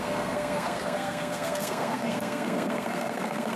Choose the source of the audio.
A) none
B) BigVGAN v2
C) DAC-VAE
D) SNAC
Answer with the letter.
D